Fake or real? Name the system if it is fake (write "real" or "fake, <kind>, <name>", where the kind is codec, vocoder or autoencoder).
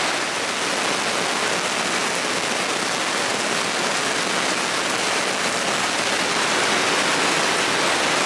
real